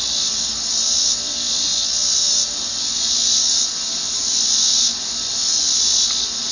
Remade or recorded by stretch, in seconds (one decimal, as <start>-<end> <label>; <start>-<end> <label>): 0.0-6.5 recorded